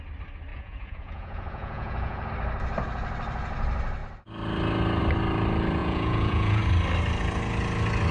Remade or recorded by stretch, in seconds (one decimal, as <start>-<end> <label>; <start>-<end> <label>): 0.0-0.5 recorded; 0.5-2.3 remade; 2.3-5.8 recorded; 5.8-6.6 remade; 6.6-8.1 recorded